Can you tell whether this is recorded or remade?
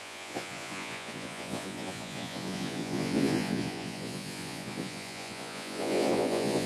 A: remade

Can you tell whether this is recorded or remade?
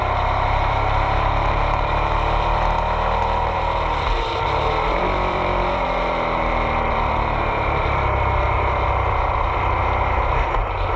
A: remade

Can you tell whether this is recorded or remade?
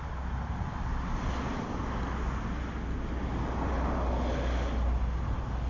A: recorded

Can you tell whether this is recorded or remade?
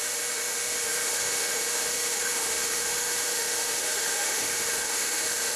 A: remade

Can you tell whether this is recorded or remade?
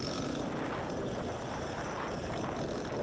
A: recorded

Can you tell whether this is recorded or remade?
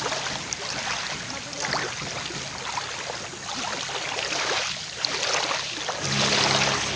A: recorded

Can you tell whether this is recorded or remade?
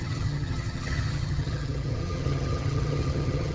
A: remade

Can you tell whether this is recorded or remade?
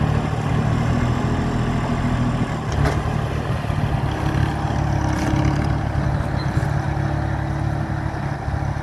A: recorded